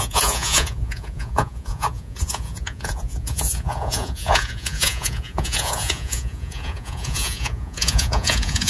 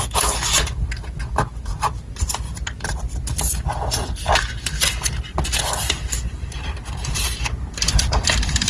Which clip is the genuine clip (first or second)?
second